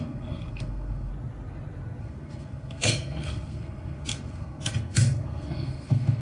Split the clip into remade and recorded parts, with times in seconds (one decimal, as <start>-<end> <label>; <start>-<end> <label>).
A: 0.0-1.1 remade; 1.1-2.0 recorded; 2.0-6.2 remade